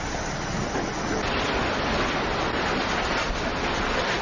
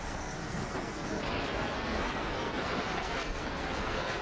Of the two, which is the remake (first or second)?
second